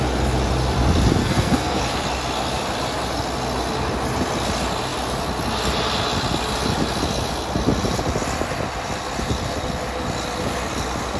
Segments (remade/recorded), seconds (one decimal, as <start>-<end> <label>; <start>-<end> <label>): 0.0-1.2 recorded; 1.2-1.8 remade; 1.8-11.2 recorded